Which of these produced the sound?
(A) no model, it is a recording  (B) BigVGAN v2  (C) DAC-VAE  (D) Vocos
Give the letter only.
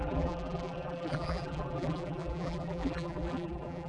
B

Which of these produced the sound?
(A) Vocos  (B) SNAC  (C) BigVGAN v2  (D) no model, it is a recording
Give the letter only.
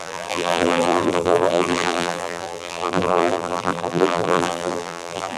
C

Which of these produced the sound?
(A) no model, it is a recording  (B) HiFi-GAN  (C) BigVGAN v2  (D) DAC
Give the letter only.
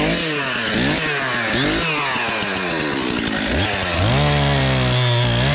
A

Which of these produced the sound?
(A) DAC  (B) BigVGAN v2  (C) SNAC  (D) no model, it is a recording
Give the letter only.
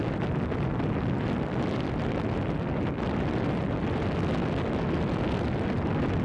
D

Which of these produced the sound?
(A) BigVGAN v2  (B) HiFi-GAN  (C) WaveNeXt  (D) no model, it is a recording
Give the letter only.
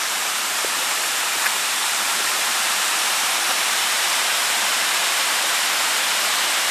A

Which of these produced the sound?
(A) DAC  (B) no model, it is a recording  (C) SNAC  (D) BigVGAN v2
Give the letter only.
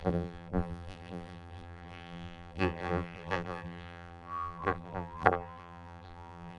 D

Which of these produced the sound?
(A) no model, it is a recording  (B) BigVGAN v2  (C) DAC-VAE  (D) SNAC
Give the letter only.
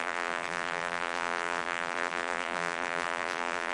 B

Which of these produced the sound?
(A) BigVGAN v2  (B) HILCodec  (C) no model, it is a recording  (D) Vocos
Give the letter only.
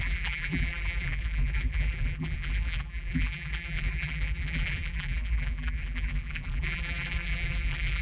A